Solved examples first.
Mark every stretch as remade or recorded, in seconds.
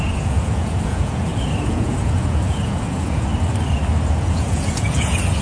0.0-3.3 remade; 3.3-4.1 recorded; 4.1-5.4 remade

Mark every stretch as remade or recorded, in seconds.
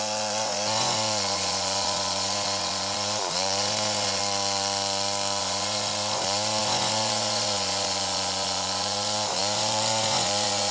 0.0-4.2 remade; 4.2-5.4 recorded; 5.4-10.7 remade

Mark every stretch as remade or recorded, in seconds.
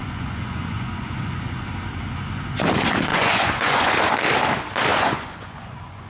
0.0-1.7 remade; 1.7-3.1 recorded; 3.1-3.9 remade; 3.9-4.9 recorded; 4.9-6.1 remade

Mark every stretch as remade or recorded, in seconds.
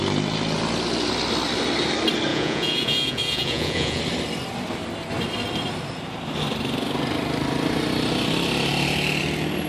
0.0-2.3 recorded; 2.3-4.0 remade; 4.0-9.7 recorded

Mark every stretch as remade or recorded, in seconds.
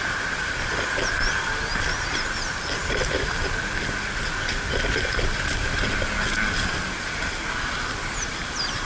0.0-8.8 recorded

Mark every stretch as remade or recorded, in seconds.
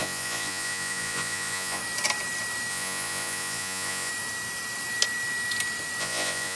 0.0-1.8 remade; 1.8-2.7 recorded; 2.7-4.1 remade; 4.1-6.0 recorded; 6.0-6.6 remade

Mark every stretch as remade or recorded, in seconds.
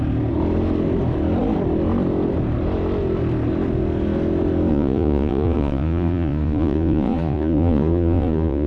0.0-4.7 recorded; 4.7-8.7 remade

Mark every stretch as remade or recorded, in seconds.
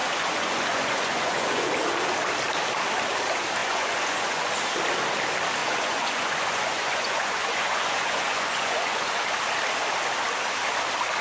0.0-1.7 remade; 1.7-3.6 recorded; 3.6-4.5 remade; 4.5-5.6 recorded; 5.6-9.2 remade; 9.2-11.2 recorded